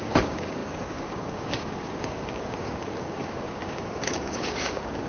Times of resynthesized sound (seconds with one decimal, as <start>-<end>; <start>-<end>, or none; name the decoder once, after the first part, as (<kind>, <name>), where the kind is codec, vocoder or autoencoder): 0.0-5.1 (codec, DAC)